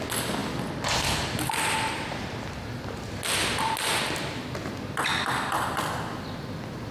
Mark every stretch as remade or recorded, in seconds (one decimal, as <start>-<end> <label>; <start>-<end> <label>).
0.0-6.9 recorded